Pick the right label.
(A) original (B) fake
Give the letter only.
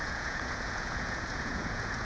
B